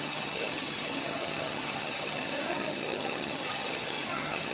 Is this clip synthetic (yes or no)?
yes